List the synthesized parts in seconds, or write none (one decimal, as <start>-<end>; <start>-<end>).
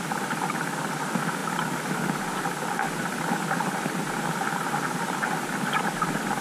none